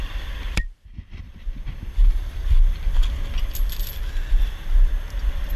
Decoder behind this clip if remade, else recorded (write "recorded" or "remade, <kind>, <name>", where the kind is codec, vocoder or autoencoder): remade, vocoder, BigVGAN v2